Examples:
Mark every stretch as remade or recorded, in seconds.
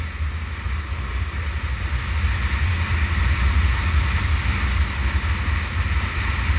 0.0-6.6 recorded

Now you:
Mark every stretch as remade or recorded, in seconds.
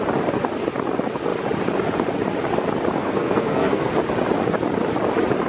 0.0-3.0 recorded; 3.0-3.9 remade; 3.9-5.5 recorded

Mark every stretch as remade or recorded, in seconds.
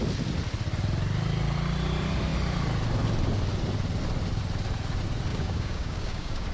0.0-5.3 recorded; 5.3-6.5 remade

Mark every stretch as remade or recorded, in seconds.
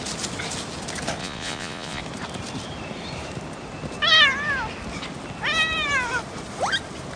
0.0-1.2 recorded; 1.2-2.0 remade; 2.0-7.2 recorded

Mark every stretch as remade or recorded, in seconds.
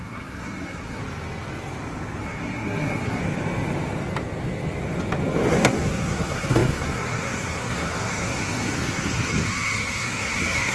0.0-1.0 remade; 1.0-2.2 recorded; 2.2-3.2 remade; 3.2-5.5 recorded; 5.5-10.7 remade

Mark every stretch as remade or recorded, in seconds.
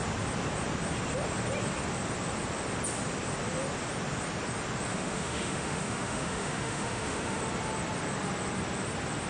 0.0-4.9 recorded; 4.9-7.4 remade; 7.4-9.3 recorded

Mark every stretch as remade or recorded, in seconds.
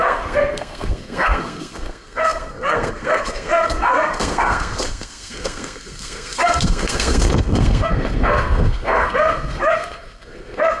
0.0-10.8 remade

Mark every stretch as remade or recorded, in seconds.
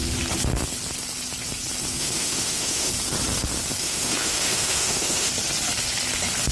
0.0-2.0 recorded; 2.0-2.9 remade; 2.9-3.8 recorded; 3.8-5.3 remade; 5.3-6.5 recorded